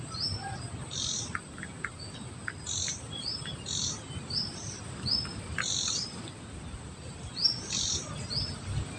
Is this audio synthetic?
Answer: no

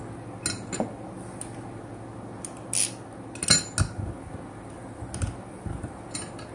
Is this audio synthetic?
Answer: no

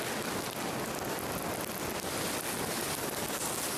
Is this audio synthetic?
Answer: no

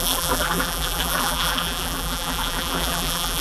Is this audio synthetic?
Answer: yes